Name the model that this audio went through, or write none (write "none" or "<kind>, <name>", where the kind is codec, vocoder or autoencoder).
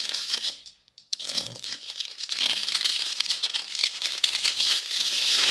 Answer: codec, SNAC